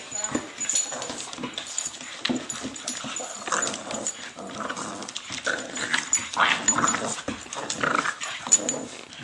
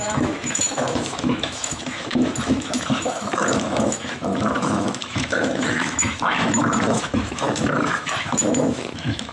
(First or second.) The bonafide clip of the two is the first